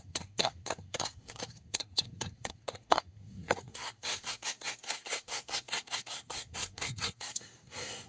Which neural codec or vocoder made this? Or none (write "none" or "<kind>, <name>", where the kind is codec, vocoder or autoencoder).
codec, SNAC